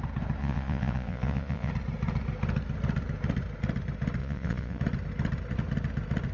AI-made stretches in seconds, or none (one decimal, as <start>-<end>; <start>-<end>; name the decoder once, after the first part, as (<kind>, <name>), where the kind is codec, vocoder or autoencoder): 0.4-1.7 (vocoder, Vocos); 4.2-4.8